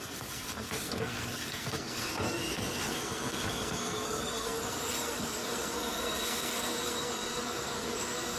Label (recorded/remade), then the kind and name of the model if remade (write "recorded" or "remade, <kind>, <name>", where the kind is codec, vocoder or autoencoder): remade, codec, SNAC